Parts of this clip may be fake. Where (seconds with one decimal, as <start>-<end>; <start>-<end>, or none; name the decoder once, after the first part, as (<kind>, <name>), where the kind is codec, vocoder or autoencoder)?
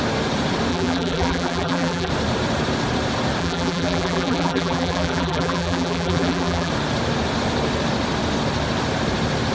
0.7-2.1 (vocoder, BigVGAN v2); 3.4-6.7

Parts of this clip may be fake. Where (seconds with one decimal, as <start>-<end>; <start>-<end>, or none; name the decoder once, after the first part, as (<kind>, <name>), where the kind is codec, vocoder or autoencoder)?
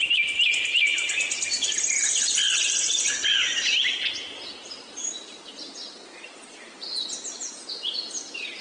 7.4-8.1 (vocoder, Vocos)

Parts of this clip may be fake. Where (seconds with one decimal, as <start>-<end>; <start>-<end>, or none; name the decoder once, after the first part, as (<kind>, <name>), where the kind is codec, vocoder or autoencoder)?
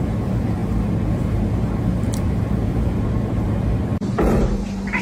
0.0-5.0 (vocoder, BigVGAN v2)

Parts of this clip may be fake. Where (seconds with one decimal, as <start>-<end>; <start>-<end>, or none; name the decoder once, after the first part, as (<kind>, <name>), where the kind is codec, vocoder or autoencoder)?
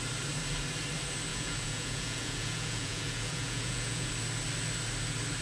1.3-4.1 (vocoder, Vocos)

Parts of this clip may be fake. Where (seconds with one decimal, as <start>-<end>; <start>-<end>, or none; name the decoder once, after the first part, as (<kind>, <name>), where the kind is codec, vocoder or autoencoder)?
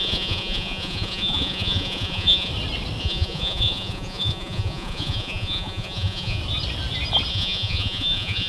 0.0-2.5 (vocoder, Vocos); 3.0-6.4; 7.3-8.5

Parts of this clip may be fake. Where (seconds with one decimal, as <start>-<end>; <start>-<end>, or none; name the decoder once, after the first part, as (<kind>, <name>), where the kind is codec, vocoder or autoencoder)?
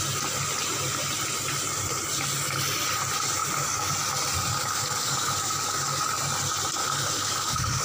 3.4-3.9 (codec, DAC); 4.6-6.0; 6.8-7.8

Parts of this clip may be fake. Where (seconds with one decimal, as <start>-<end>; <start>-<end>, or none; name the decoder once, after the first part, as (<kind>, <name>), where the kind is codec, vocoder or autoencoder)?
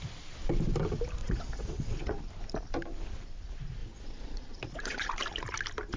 1.2-2.2 (vocoder, Vocos); 3.8-5.1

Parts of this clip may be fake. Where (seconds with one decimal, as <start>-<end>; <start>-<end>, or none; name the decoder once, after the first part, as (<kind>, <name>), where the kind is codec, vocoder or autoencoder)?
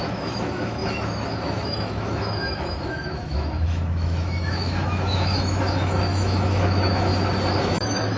0.0-7.1 (autoencoder, DAC-VAE); 7.6-8.2